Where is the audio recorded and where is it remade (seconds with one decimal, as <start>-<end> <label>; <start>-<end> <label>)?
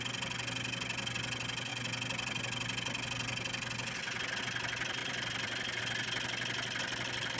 0.0-5.0 recorded; 5.0-5.8 remade; 5.8-7.4 recorded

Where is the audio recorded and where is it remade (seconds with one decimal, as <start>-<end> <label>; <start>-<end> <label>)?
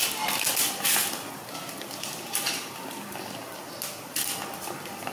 0.0-5.1 recorded